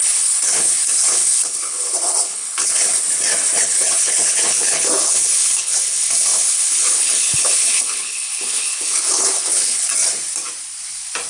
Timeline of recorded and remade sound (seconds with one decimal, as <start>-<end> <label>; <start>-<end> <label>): 0.0-2.9 remade; 2.9-3.6 recorded; 3.6-9.9 remade; 9.9-11.3 recorded

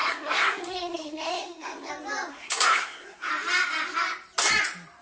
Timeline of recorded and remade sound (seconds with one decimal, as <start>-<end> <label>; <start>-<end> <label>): 0.0-1.9 remade; 1.9-2.3 recorded; 2.3-3.3 remade; 3.3-5.0 recorded

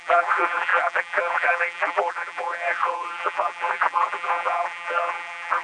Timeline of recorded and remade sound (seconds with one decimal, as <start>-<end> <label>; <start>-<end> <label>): 0.0-5.6 remade

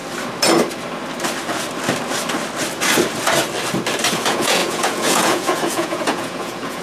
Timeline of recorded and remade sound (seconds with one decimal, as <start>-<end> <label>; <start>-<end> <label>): 0.0-4.1 recorded; 4.1-6.8 remade

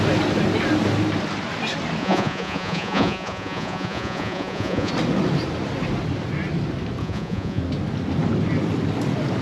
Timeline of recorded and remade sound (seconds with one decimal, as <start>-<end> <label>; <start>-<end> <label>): 0.0-2.0 recorded; 2.0-4.9 remade; 4.9-7.0 recorded; 7.0-7.6 remade; 7.6-9.4 recorded